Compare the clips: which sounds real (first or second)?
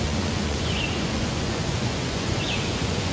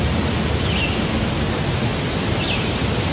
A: second